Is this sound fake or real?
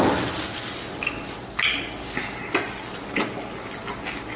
real